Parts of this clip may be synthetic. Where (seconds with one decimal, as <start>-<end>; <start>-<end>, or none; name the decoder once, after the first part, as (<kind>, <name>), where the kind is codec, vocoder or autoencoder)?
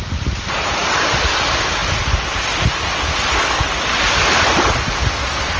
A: none